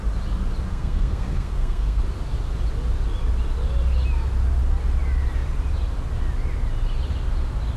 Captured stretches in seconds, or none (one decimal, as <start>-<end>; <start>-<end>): 0.0-0.7; 2.0-7.8